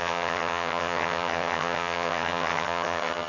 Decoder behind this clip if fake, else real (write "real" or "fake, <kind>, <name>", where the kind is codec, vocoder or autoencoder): fake, vocoder, HiFi-GAN